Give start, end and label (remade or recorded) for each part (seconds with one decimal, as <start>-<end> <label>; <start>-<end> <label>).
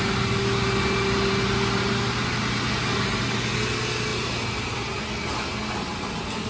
0.0-4.1 recorded; 4.1-5.1 remade; 5.1-6.5 recorded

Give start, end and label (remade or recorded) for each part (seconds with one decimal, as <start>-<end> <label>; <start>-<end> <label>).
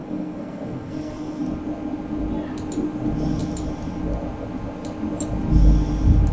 0.0-1.4 remade; 1.4-6.3 recorded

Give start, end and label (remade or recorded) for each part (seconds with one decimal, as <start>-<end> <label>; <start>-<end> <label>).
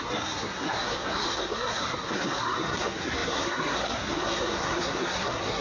0.0-5.6 remade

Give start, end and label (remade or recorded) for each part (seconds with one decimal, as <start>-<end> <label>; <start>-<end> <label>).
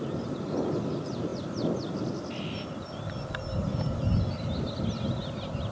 0.0-5.7 recorded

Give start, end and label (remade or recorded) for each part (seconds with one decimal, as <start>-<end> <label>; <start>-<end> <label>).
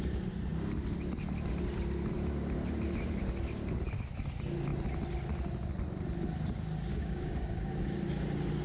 0.0-6.9 recorded; 6.9-7.7 remade; 7.7-8.6 recorded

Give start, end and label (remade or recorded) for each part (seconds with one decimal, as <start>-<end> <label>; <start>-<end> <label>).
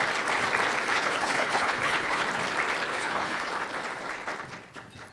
0.0-0.9 recorded; 0.9-2.2 remade; 2.2-2.9 recorded; 2.9-3.5 remade; 3.5-5.1 recorded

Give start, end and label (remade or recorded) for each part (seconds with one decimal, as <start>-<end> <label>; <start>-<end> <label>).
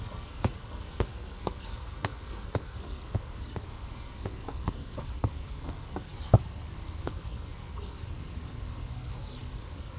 0.0-10.0 remade